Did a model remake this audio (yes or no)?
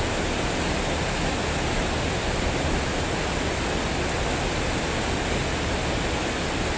no